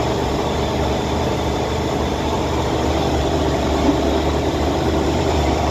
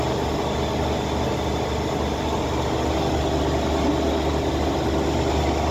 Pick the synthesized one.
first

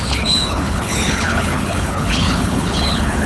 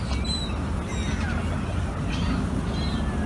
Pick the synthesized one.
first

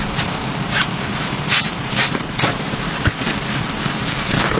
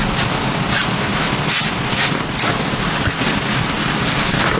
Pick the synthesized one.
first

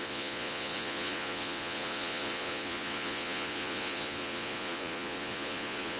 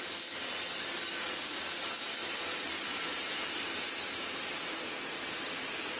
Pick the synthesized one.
first